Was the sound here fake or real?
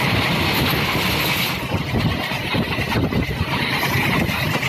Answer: real